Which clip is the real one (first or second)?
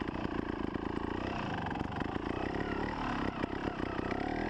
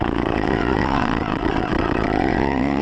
first